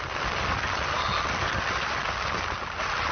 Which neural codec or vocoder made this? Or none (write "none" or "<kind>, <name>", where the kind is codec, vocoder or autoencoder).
none